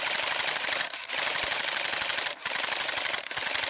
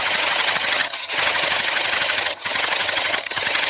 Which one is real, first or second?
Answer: first